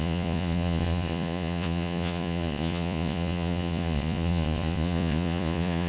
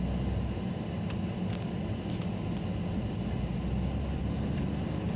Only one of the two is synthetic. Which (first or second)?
first